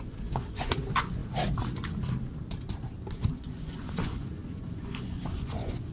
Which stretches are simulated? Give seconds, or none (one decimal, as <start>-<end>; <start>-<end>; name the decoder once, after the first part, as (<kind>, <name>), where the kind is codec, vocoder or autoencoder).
0.0-1.2 (vocoder, Vocos); 3.1-5.9